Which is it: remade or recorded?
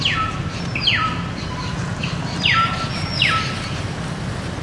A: recorded